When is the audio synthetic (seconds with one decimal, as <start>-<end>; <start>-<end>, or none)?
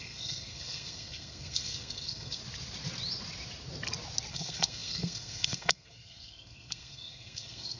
0.0-2.4; 4.3-7.8